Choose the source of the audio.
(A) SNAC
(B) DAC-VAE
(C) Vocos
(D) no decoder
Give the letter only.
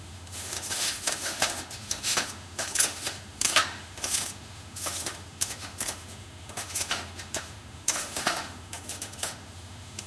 B